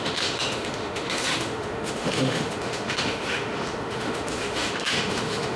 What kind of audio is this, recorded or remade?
remade